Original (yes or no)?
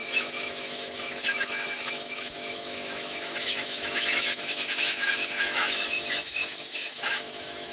no